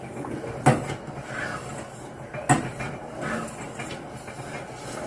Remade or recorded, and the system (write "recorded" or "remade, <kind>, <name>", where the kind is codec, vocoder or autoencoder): recorded